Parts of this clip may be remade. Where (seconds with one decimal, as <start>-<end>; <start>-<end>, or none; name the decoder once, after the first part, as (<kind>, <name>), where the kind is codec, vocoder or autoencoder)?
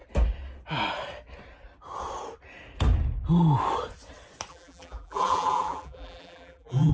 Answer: 4.5-6.9 (vocoder, BigVGAN v2)